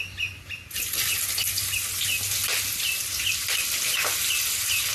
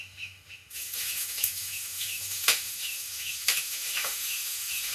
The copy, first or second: second